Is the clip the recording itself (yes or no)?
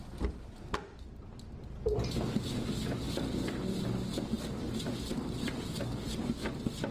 yes